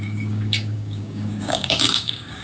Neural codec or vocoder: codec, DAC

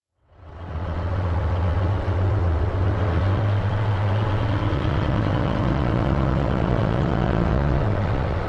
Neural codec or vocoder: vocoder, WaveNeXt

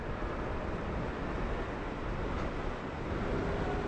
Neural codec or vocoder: none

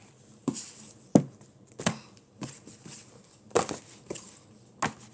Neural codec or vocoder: none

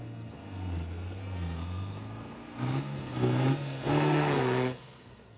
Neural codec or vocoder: codec, SNAC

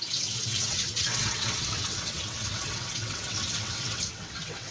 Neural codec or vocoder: vocoder, WaveNeXt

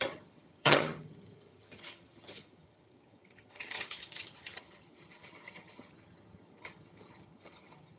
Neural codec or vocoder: vocoder, HiFi-GAN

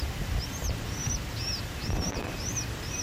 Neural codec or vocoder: none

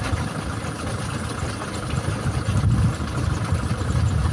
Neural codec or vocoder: none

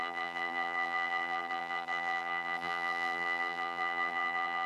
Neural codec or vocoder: vocoder, BigVGAN v2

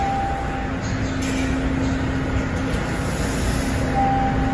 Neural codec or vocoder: none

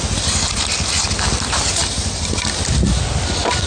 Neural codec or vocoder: none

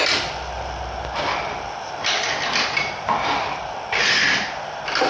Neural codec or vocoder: none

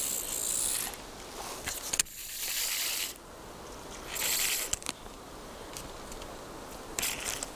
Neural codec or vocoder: none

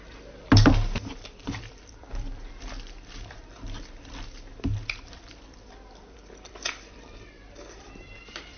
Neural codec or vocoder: vocoder, BigVGAN v2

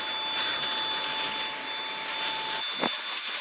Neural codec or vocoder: none